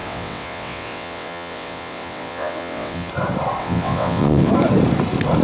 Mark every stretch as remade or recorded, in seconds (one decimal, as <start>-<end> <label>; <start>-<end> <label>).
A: 0.0-3.1 remade; 3.1-3.6 recorded; 3.6-4.5 remade; 4.5-5.4 recorded